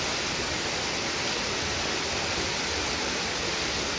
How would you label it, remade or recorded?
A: recorded